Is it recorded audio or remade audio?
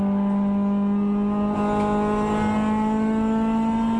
recorded